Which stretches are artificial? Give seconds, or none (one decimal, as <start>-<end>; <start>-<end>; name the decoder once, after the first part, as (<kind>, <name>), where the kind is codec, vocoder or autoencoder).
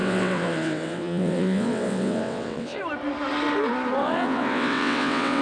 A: 0.0-2.8 (vocoder, WaveNeXt); 4.0-5.4